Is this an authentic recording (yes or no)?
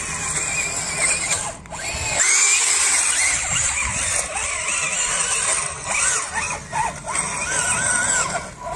yes